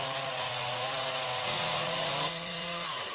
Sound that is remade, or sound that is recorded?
remade